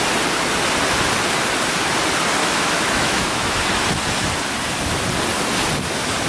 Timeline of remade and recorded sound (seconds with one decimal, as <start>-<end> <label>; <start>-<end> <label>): 0.0-2.4 recorded; 2.4-3.6 remade; 3.6-6.3 recorded